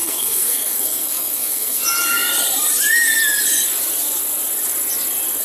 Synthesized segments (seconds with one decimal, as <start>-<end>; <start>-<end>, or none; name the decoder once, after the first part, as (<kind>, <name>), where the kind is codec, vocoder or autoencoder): 0.0-1.8 (codec, SNAC)